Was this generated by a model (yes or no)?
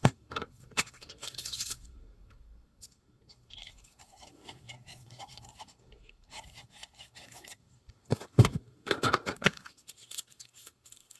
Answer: yes